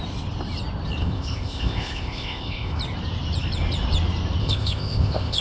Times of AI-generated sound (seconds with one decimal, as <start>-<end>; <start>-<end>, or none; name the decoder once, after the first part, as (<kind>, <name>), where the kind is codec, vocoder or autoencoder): 1.0-2.8 (codec, ZipCodec); 4.4-5.4